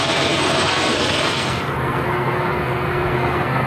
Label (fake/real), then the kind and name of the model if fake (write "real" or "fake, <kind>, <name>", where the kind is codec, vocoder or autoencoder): fake, codec, SNAC